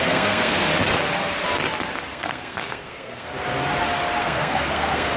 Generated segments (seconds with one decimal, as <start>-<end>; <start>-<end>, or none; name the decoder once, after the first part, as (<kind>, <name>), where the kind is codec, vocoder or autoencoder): 0.0-0.7 (codec, SNAC); 2.1-3.3; 4.2-5.2